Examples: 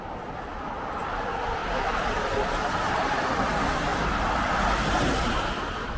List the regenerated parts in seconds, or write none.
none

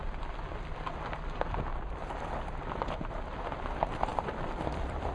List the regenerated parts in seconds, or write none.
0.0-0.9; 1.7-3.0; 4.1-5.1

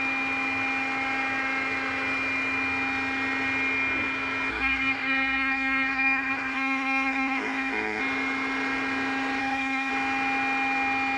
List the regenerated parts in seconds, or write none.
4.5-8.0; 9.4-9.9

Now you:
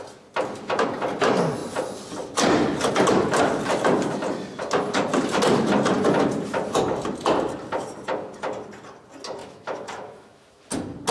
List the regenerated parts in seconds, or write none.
9.4-10.6

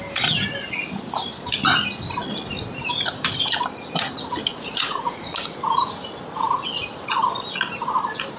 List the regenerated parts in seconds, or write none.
4.5-5.6